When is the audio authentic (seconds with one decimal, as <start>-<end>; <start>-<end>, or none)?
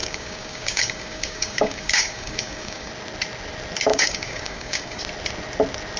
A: 2.9-3.9; 5.0-6.0